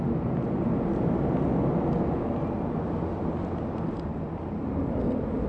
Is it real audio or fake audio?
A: real